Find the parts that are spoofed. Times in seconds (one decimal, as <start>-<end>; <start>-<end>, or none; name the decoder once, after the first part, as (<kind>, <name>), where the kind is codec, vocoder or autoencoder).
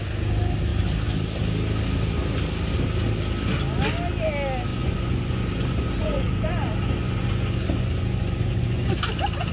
4.7-8.9 (vocoder, Vocos)